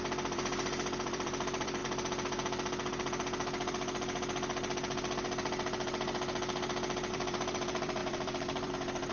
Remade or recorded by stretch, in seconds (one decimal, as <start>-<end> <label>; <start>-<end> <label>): 0.0-1.8 remade; 1.8-7.1 recorded; 7.1-9.1 remade